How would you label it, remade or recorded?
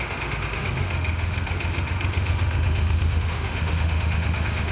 remade